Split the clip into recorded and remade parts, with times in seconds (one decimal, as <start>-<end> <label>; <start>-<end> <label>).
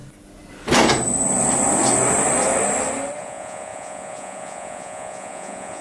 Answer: 0.0-3.2 recorded; 3.2-5.8 remade